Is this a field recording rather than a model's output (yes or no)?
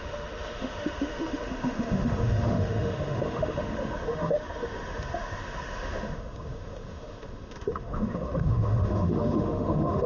no